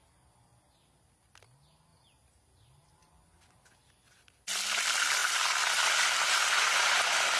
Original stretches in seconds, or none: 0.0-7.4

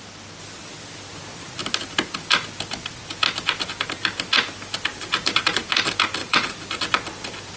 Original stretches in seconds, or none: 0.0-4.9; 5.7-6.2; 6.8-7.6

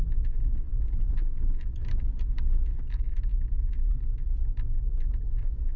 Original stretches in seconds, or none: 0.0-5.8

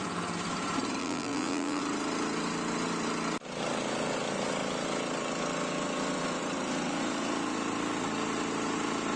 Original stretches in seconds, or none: 0.0-1.0; 1.8-9.2